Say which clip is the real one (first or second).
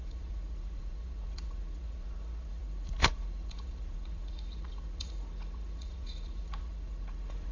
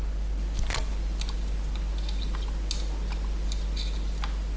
second